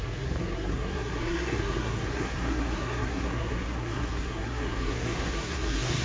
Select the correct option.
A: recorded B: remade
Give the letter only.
B